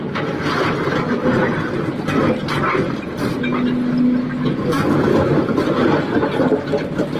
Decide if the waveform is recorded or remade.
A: recorded